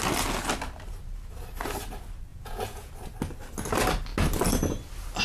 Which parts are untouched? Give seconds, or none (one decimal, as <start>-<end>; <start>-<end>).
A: 0.0-2.3; 2.9-5.2